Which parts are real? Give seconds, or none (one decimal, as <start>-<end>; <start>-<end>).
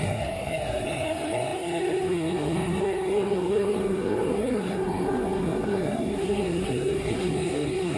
none